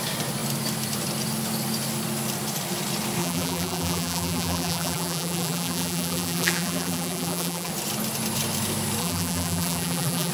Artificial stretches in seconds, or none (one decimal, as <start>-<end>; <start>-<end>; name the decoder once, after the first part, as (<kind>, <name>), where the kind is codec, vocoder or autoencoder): 3.2-7.7 (vocoder, BigVGAN v2); 9.0-10.3